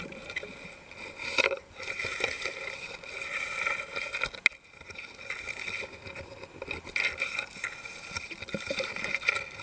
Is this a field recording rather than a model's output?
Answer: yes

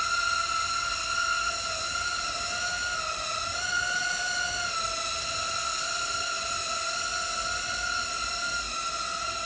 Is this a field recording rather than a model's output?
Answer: yes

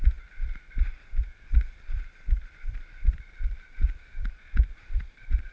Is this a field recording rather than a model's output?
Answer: no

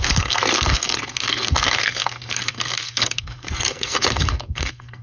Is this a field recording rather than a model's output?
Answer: no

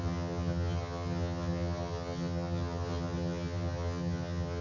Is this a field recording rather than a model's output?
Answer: no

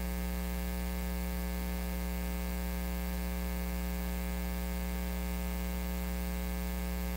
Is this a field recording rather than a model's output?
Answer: yes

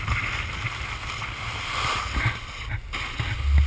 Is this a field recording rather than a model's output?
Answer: yes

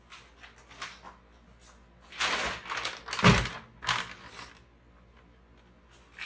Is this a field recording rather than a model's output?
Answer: yes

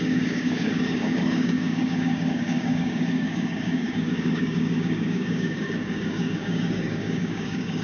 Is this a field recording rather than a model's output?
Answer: no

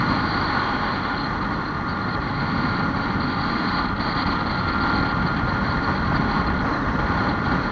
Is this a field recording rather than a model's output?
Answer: yes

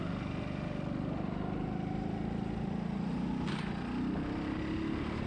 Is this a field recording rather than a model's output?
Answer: yes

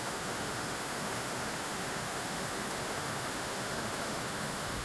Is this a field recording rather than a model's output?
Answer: no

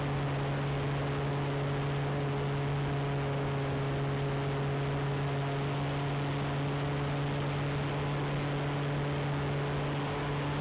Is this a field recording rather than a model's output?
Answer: yes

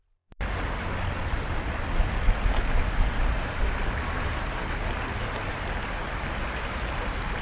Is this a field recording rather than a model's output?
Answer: yes